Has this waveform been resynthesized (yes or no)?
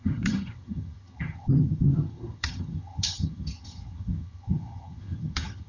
yes